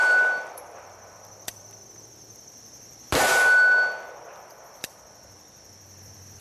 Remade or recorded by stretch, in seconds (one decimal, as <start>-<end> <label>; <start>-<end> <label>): 0.0-3.3 remade; 3.3-4.7 recorded; 4.7-6.4 remade

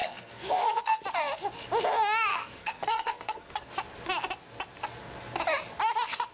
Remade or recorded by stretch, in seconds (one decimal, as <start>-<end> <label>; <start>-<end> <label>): 0.0-1.0 remade; 1.0-2.3 recorded; 2.3-3.7 remade; 3.7-6.3 recorded

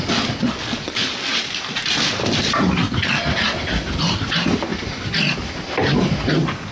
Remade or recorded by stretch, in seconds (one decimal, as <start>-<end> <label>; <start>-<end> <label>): 0.0-1.3 recorded; 1.3-3.1 remade; 3.1-6.7 recorded

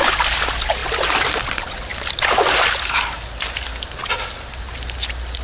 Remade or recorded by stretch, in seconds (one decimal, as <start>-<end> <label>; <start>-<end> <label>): 0.0-5.4 recorded